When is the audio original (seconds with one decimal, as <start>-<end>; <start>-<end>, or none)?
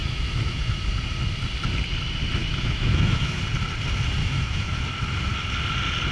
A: 0.8-2.4; 3.4-4.2; 4.8-6.1